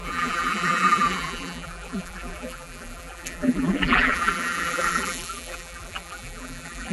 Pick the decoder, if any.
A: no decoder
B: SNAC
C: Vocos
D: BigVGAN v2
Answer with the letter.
D